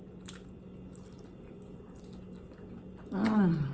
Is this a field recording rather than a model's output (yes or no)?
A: yes